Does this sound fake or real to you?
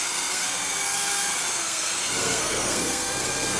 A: fake